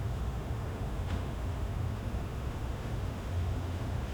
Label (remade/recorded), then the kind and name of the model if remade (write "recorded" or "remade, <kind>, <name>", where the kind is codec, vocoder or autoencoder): remade, autoencoder, DAC-VAE